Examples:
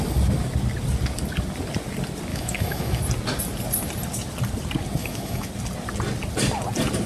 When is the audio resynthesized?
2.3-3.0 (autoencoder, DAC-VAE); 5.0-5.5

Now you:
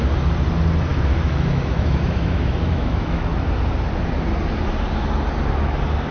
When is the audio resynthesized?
0.9-3.3 (autoencoder, DAC-VAE)

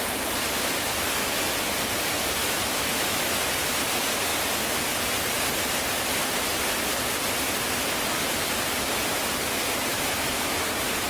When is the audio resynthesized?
2.4-3.4 (autoencoder, DAC-VAE); 9.9-10.5

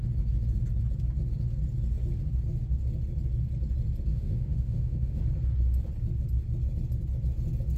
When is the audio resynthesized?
4.1-5.2 (autoencoder, DAC-VAE)

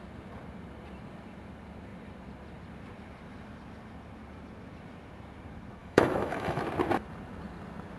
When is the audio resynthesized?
5.8-6.6 (autoencoder, DAC-VAE)

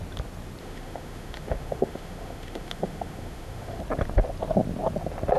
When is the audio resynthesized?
0.6-3.8 (autoencoder, DAC-VAE)

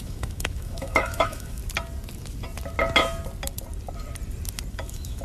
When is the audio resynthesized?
0.0-1.6 (autoencoder, DAC-VAE); 4.7-5.2